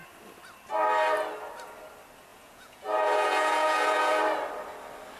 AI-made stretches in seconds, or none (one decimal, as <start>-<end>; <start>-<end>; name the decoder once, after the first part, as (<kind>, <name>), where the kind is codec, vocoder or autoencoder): 2.3-4.1 (vocoder, Vocos)